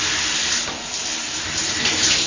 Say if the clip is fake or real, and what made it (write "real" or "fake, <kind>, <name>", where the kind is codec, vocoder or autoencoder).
fake, vocoder, BigVGAN v2